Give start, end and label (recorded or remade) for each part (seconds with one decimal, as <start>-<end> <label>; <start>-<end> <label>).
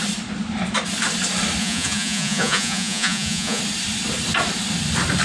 0.0-1.6 recorded; 1.6-3.6 remade; 3.6-5.2 recorded